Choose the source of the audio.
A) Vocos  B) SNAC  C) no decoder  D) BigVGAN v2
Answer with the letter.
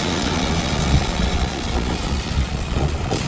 A